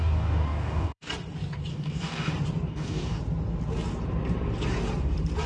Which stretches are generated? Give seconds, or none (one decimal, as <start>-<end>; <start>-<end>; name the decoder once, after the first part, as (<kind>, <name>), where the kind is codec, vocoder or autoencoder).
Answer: 0.0-1.1 (codec, DAC); 1.7-2.3; 2.7-3.2